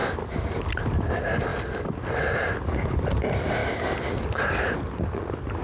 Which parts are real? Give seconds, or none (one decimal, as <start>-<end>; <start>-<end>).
0.0-5.6